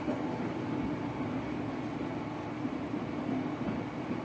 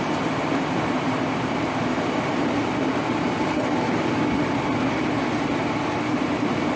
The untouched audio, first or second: first